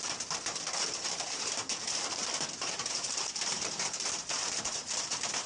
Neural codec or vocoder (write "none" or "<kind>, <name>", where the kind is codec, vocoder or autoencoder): vocoder, BigVGAN v2